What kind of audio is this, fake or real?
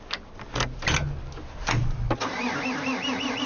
real